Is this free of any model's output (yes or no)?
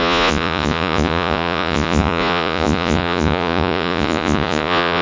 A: no